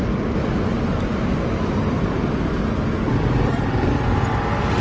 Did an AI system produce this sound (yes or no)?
no